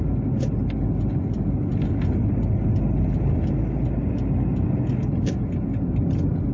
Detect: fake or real real